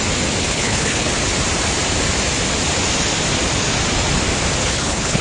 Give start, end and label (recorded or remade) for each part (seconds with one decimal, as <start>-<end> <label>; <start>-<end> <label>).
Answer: 0.0-0.4 recorded; 0.4-1.1 remade; 1.1-4.6 recorded; 4.6-5.2 remade